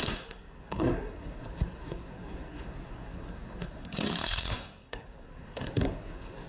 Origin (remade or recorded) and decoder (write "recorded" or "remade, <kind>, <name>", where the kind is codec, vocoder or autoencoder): remade, codec, SNAC